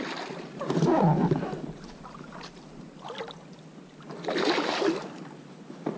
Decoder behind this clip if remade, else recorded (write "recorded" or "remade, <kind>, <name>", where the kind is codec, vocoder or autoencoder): recorded